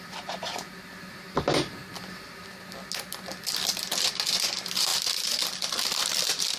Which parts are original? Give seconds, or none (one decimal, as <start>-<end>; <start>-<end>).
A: 0.0-6.6